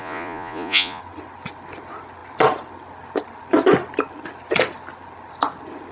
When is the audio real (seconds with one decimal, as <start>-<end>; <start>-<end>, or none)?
1.0-5.9